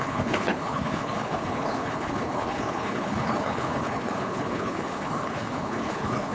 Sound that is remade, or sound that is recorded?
remade